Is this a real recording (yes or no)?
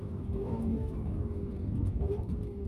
no